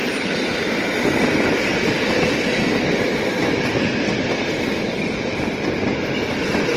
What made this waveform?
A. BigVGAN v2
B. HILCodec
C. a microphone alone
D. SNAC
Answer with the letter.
A